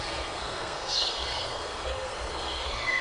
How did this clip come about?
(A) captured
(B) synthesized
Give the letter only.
B